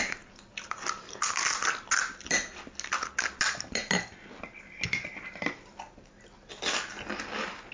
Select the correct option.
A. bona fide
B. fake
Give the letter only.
A